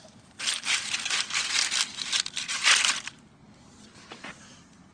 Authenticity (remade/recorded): recorded